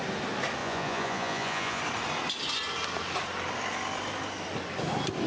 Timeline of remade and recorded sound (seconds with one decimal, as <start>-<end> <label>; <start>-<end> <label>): 0.0-0.6 recorded; 0.6-1.8 remade; 1.8-5.3 recorded